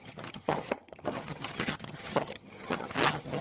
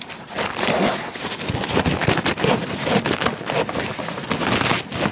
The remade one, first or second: first